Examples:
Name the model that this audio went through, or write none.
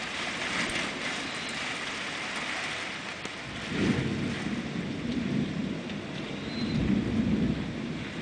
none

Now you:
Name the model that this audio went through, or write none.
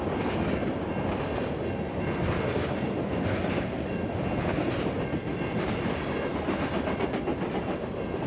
none